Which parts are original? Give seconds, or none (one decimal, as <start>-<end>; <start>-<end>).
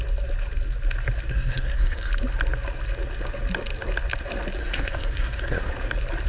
0.0-1.3; 2.1-4.6; 5.7-6.3